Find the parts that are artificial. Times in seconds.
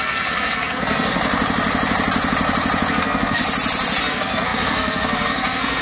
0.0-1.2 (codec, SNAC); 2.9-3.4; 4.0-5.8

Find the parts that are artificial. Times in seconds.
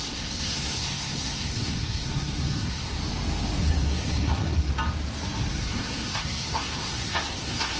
0.0-3.0 (codec, SNAC); 3.6-4.7; 5.5-7.8